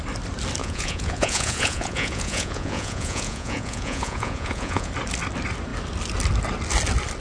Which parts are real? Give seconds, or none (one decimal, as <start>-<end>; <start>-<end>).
0.0-0.6; 4.9-7.2